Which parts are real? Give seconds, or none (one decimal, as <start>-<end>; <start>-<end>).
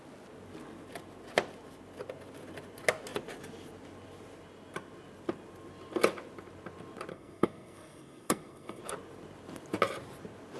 0.0-7.1; 8.8-10.6